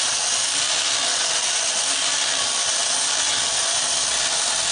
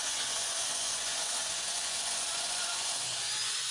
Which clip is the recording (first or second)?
first